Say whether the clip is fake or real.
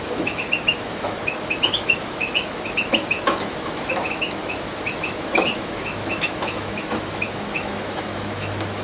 fake